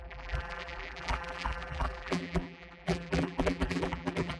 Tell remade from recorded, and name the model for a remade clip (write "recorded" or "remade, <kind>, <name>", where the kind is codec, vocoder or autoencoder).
remade, vocoder, BigVGAN v2